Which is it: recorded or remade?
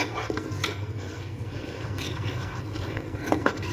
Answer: remade